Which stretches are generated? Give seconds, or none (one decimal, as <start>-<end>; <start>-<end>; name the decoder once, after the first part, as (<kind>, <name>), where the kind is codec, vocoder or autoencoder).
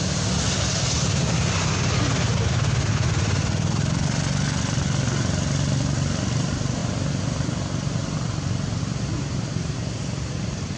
none